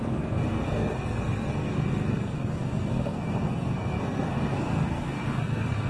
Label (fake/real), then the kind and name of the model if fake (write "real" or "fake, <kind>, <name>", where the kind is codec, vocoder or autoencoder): fake, codec, SNAC